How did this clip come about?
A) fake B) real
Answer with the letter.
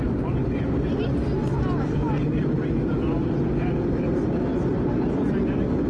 B